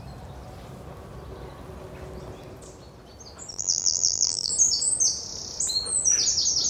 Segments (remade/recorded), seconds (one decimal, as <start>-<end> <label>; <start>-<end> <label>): 0.0-3.5 recorded; 3.5-4.5 remade; 4.5-6.7 recorded